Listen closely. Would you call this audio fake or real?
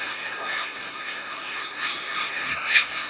fake